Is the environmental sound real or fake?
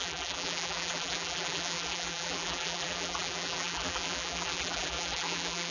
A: fake